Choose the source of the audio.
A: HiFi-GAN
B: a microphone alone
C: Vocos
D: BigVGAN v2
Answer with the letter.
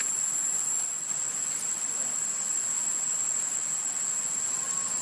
B